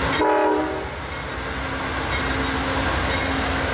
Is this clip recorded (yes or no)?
yes